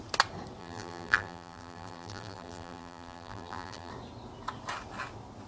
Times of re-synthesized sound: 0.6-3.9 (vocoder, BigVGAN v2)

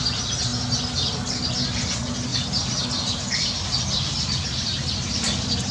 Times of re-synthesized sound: none

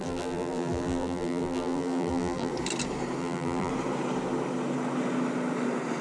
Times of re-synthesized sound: 0.0-2.5 (vocoder, BigVGAN v2); 3.2-3.7

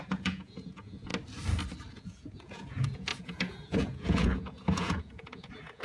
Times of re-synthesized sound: 0.0-1.1 (vocoder, Vocos); 1.9-5.8

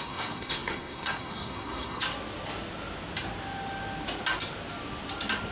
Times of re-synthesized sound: 0.0-2.0 (codec, SNAC)